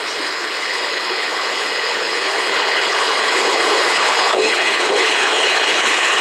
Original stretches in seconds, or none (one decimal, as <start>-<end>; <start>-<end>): none